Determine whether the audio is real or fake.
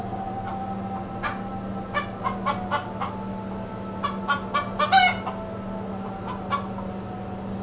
real